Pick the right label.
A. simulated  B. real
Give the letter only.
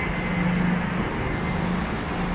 B